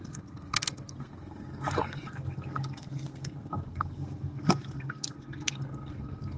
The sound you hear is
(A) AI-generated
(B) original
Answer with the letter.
A